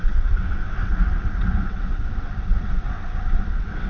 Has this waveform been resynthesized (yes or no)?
yes